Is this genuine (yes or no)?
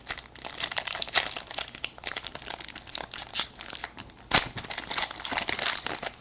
yes